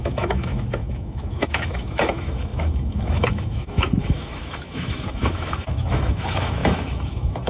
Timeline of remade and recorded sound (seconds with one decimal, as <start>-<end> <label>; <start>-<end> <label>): 0.0-7.5 remade